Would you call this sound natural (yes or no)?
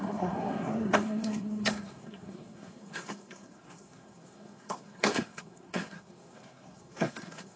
no